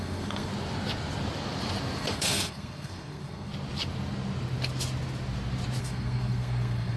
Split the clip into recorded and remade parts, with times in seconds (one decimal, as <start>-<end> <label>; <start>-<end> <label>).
0.0-0.5 remade; 0.5-2.0 recorded; 2.0-3.5 remade; 3.5-5.8 recorded; 5.8-7.0 remade